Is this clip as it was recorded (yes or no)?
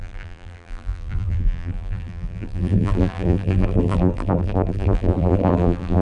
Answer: no